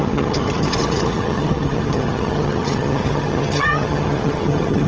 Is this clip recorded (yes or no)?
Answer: no